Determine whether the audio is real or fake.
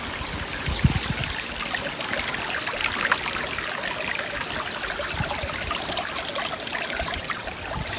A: real